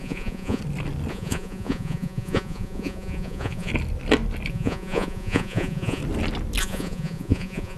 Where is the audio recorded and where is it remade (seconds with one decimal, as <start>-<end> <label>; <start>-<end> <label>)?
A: 0.0-0.6 remade; 0.6-1.1 recorded; 1.1-3.7 remade; 3.7-4.5 recorded; 4.5-6.0 remade; 6.0-6.6 recorded; 6.6-7.8 remade